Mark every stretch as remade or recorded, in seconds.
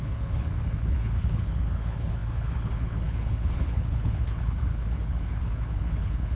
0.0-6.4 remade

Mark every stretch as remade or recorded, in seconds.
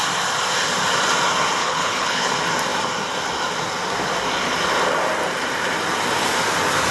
0.0-1.6 recorded; 1.6-2.3 remade; 2.3-6.9 recorded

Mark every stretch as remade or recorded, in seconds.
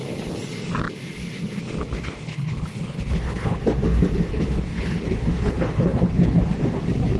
0.0-2.3 recorded; 2.3-3.6 remade; 3.6-4.3 recorded; 4.3-6.4 remade; 6.4-7.2 recorded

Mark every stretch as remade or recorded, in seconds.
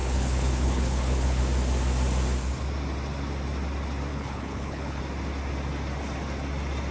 0.0-1.4 remade; 1.4-4.1 recorded; 4.1-5.0 remade; 5.0-6.9 recorded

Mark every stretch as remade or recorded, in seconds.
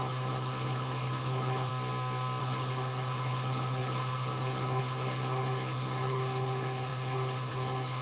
0.0-1.7 remade; 1.7-2.4 recorded; 2.4-8.0 remade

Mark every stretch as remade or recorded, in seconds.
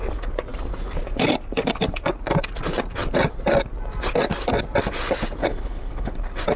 0.0-5.4 recorded; 5.4-6.1 remade; 6.1-6.6 recorded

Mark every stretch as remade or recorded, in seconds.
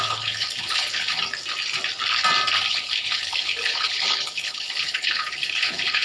0.0-1.2 remade; 1.2-2.7 recorded; 2.7-6.0 remade